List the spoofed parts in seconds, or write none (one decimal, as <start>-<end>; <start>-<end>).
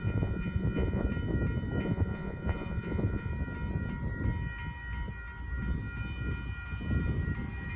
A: 0.0-1.1; 1.8-3.3